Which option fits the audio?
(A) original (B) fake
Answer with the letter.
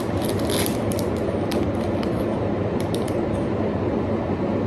B